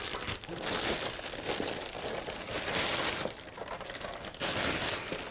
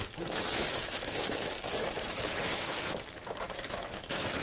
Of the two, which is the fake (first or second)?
second